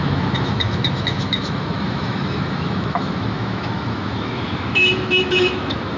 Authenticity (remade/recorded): remade